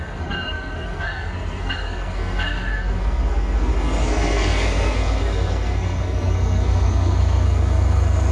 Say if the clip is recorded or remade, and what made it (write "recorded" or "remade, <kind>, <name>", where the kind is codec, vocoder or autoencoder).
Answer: remade, codec, SNAC